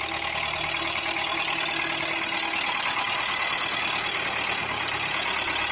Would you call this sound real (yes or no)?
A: yes